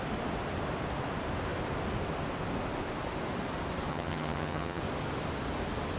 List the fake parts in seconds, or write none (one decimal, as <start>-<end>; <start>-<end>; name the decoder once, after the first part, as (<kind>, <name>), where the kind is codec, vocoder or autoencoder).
3.9-4.8 (vocoder, HiFi-GAN)